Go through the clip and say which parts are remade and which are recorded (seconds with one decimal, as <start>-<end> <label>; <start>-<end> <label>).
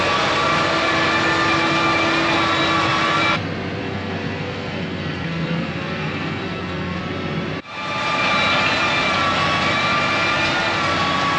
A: 0.0-3.8 recorded; 3.8-7.0 remade; 7.0-11.4 recorded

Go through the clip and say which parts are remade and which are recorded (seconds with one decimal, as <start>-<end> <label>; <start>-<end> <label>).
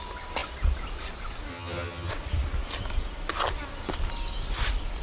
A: 0.0-1.5 recorded; 1.5-2.1 remade; 2.1-5.0 recorded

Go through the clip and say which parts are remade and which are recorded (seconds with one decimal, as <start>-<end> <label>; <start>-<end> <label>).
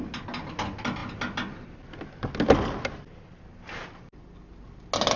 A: 0.0-5.2 recorded